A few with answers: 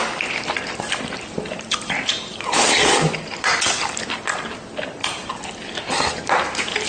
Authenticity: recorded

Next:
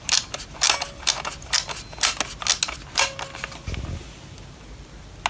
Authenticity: recorded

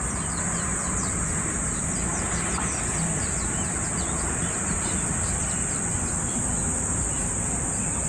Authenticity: remade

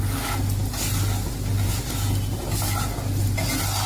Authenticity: recorded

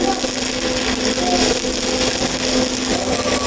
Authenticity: recorded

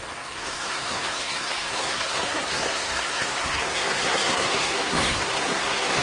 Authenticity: remade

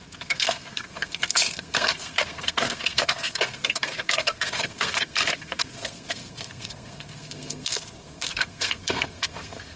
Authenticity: remade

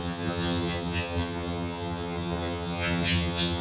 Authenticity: remade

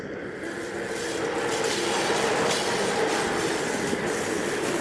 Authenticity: recorded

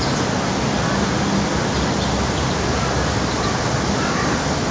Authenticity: recorded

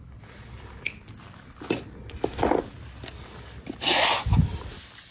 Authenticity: recorded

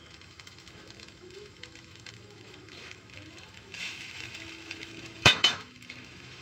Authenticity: remade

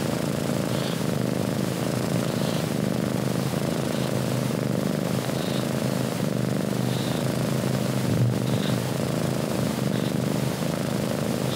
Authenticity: recorded